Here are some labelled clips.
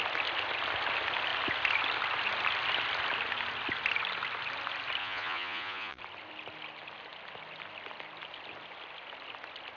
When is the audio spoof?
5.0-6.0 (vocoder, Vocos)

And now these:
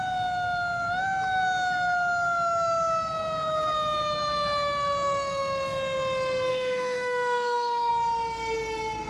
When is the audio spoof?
6.5-7.9 (autoencoder, DAC-VAE)

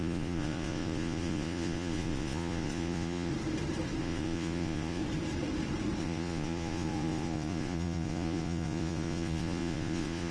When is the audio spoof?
0.0-3.3 (vocoder, Vocos); 4.0-5.0; 6.0-10.3